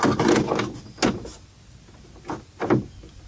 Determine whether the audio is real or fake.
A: real